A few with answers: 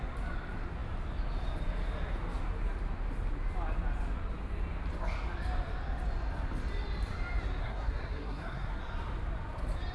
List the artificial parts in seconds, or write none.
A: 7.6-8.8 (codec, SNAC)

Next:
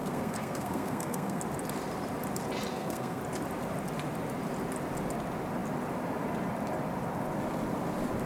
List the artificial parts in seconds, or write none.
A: 0.0-1.4 (codec, SNAC); 2.7-3.2

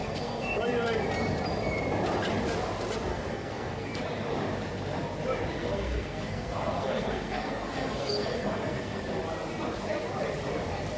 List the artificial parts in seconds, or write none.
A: 0.0-0.6 (codec, SNAC); 3.1-4.0; 5.6-9.0